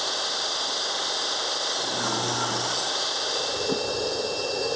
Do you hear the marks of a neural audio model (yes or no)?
no